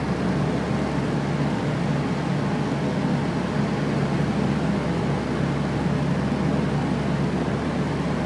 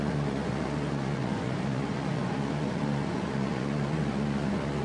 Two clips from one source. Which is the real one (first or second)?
first